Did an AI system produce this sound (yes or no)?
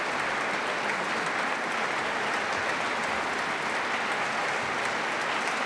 no